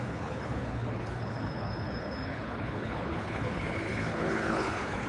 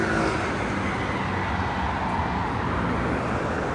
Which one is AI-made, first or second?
first